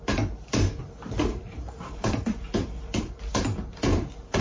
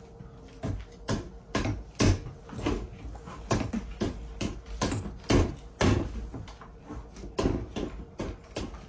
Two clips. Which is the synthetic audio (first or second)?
first